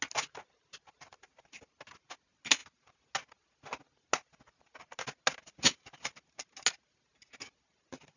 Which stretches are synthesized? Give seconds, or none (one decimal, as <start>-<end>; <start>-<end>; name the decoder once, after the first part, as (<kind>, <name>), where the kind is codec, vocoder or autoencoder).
none